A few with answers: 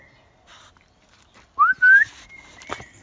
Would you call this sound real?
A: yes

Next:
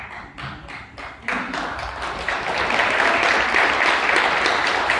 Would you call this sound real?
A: yes